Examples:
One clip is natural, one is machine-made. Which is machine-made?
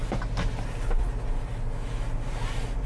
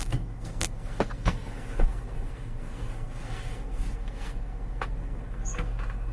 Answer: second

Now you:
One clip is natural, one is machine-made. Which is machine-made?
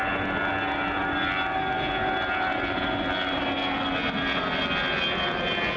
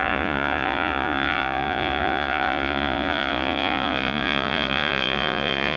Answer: second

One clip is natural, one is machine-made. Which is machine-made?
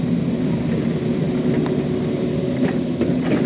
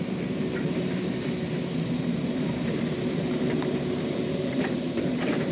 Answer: second